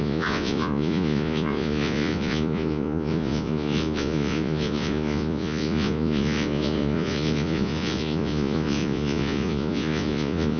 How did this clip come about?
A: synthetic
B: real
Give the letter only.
A